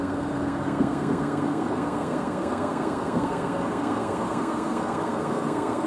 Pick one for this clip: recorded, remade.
remade